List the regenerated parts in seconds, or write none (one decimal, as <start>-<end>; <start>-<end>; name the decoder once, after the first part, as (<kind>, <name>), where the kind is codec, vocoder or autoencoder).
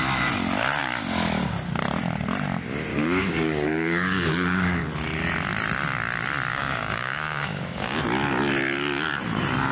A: 2.9-4.8 (codec, DAC); 6.5-8.0